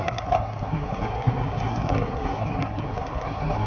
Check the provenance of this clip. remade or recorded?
remade